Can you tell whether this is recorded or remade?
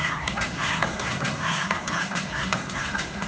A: remade